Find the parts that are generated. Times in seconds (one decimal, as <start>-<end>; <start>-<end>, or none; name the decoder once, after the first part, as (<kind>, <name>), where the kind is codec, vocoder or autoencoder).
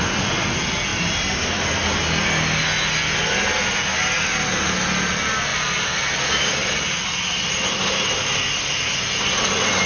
0.9-1.8 (vocoder, BigVGAN v2); 5.5-7.2